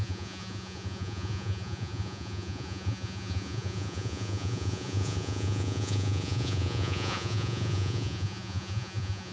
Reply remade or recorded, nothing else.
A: remade